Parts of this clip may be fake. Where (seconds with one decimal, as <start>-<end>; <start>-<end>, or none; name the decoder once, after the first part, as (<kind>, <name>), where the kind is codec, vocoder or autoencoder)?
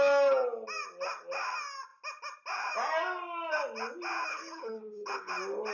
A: 4.3-5.3 (codec, HILCodec)